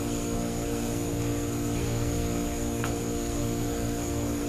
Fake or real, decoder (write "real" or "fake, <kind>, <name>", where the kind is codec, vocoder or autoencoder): fake, codec, SNAC